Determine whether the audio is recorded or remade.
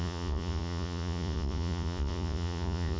remade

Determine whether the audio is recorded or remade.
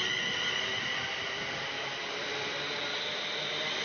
recorded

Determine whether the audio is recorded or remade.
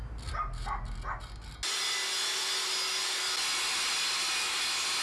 recorded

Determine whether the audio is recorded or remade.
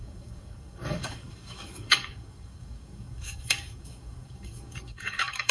remade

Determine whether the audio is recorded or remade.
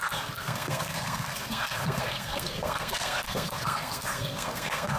remade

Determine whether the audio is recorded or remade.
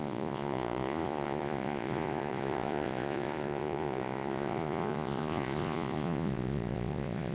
remade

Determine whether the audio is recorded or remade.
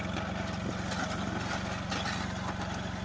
recorded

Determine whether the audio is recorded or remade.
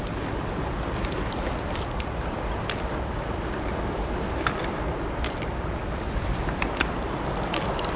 recorded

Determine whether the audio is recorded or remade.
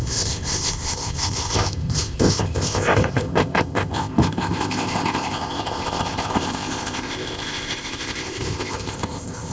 remade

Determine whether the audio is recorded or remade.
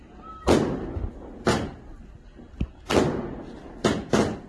recorded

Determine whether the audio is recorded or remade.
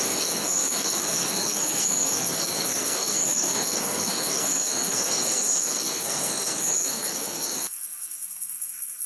remade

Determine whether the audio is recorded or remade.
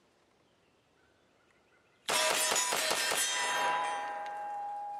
remade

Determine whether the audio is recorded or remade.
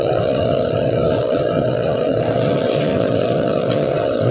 remade